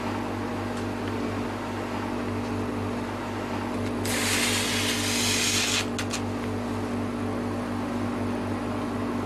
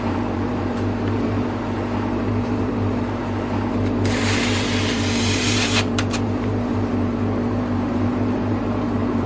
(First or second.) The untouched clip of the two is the first